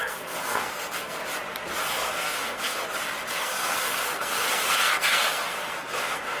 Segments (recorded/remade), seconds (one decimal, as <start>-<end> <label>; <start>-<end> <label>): 0.0-1.2 remade; 1.2-1.8 recorded; 1.8-2.8 remade; 2.8-3.3 recorded; 3.3-6.4 remade

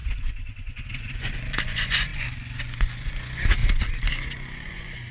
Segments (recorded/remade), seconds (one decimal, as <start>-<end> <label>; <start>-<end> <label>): 0.0-3.6 remade; 3.6-4.1 recorded; 4.1-5.1 remade

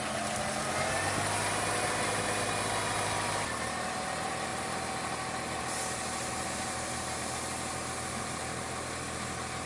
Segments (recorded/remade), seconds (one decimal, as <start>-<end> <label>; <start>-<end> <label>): 0.0-9.7 recorded

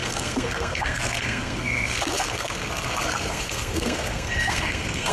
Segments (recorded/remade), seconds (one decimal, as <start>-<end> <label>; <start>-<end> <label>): 0.0-5.1 remade

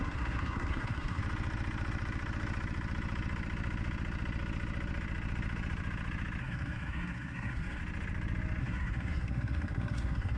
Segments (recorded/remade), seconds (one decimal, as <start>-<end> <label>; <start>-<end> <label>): 0.0-1.2 remade; 1.2-6.4 recorded; 6.4-7.8 remade; 7.8-8.6 recorded; 8.6-10.4 remade

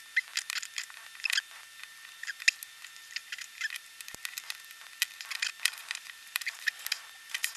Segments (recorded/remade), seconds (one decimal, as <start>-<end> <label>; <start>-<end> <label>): 0.0-3.2 recorded; 3.2-4.1 remade; 4.1-5.8 recorded; 5.8-6.7 remade; 6.7-7.6 recorded

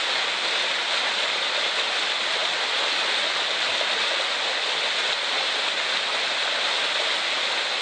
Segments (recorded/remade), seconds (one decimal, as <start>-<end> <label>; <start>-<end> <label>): 0.0-7.8 recorded